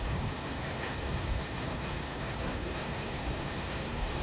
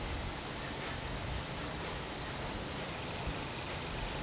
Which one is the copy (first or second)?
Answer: first